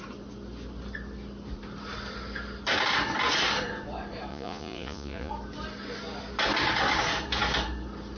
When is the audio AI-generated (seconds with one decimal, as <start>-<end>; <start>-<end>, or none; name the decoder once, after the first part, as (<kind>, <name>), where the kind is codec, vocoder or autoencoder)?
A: 4.3-5.3 (vocoder, Vocos)